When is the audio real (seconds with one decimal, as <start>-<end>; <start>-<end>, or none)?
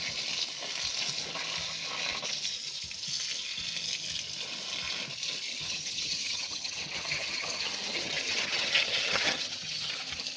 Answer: 0.0-5.5; 9.9-10.4